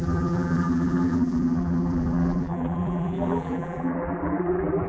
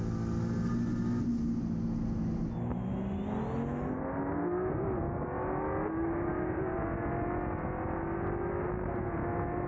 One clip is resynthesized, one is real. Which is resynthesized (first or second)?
first